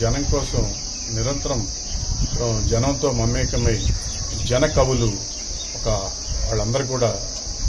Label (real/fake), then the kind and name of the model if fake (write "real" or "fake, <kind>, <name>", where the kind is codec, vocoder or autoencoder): real